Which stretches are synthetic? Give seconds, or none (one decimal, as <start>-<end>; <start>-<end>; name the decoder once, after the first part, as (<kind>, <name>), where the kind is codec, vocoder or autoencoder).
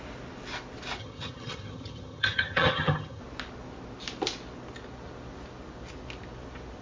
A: 1.0-3.2 (vocoder, HiFi-GAN)